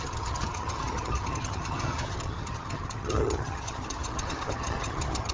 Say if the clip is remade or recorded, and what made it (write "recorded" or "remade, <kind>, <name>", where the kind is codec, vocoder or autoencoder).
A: remade, vocoder, HiFi-GAN